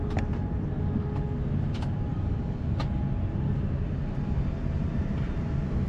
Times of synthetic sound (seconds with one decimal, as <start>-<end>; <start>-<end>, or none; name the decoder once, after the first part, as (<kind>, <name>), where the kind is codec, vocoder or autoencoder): 2.1-2.7 (codec, DAC)